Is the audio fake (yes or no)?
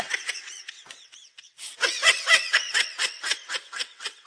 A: yes